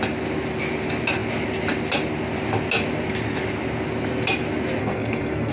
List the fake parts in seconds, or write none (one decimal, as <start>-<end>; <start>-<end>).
4.8-5.5